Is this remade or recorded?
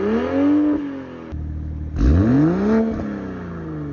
recorded